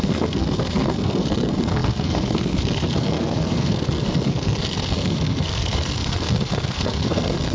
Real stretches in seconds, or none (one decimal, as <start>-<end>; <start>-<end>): none